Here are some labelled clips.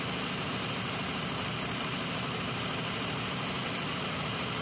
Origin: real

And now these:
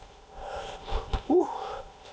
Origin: fake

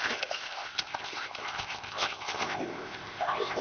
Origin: fake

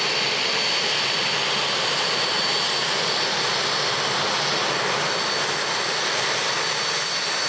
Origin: real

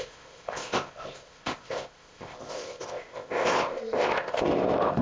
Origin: fake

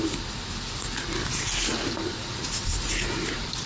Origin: real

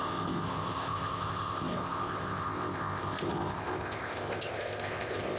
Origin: fake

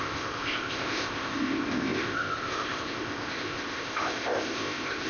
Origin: fake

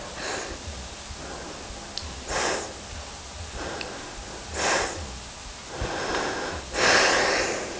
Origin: real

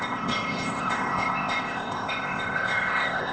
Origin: fake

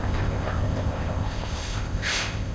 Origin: fake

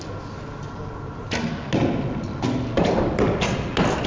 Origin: real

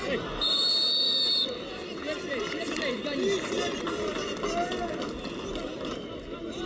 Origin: real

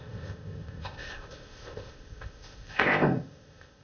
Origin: fake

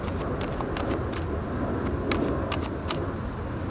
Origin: real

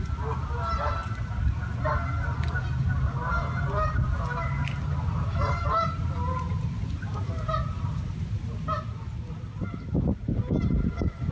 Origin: real